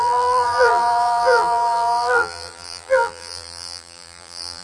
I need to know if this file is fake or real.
fake